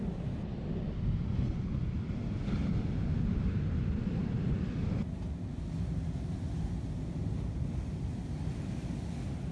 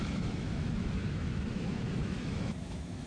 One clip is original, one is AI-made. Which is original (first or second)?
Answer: first